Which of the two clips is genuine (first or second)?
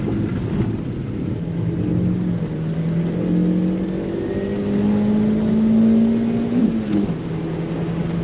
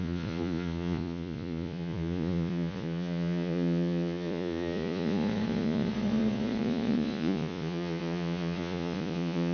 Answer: first